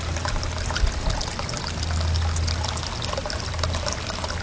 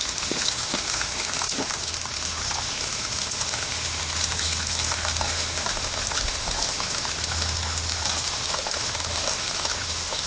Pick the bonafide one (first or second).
first